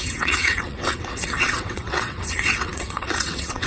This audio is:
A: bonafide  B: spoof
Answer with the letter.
B